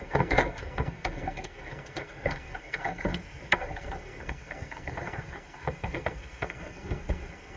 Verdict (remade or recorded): remade